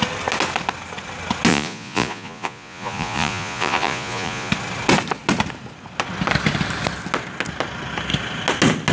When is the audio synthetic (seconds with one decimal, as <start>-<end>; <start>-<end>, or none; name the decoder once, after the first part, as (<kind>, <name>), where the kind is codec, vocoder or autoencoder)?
1.5-4.5 (vocoder, Vocos)